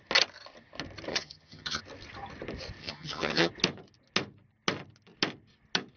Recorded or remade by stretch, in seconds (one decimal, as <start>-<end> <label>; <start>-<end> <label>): 0.0-1.1 recorded; 1.1-1.8 remade; 1.8-2.8 recorded; 2.8-3.5 remade; 3.5-6.0 recorded